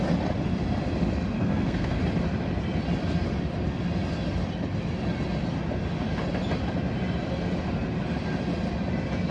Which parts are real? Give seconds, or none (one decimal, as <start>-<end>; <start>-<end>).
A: 0.0-1.4; 2.0-9.3